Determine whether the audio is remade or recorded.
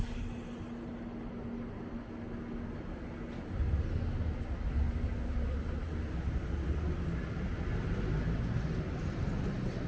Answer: recorded